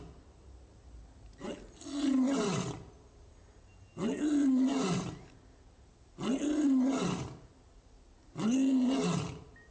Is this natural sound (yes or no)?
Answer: yes